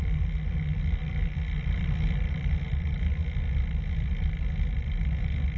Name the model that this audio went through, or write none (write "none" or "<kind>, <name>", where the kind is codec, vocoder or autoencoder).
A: none